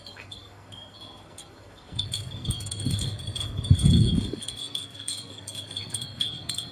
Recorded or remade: remade